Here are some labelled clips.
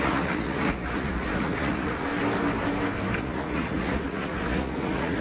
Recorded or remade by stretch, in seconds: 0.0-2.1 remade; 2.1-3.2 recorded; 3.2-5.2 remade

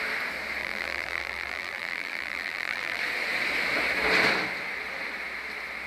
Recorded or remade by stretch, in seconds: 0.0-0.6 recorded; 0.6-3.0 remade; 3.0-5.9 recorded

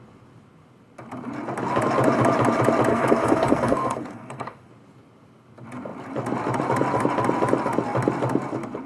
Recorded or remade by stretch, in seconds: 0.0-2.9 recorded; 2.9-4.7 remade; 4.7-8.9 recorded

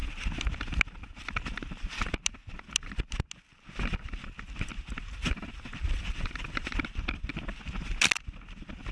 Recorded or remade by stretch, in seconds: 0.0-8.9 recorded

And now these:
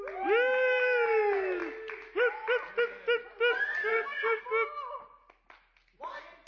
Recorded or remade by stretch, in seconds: 0.0-3.9 recorded; 3.9-4.4 remade; 4.4-6.5 recorded